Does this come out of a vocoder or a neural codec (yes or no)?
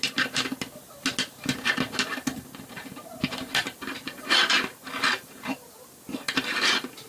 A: no